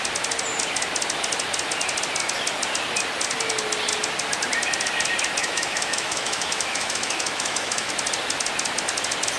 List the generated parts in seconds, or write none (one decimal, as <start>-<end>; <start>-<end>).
5.4-7.9